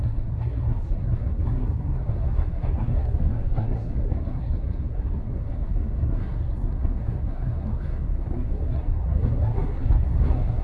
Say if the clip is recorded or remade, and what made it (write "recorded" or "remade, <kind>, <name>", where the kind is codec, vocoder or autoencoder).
remade, codec, SNAC